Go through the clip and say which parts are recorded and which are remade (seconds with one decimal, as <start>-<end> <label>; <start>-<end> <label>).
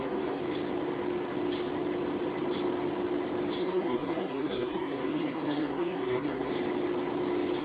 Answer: 0.0-0.4 remade; 0.4-3.6 recorded; 3.6-6.5 remade; 6.5-7.6 recorded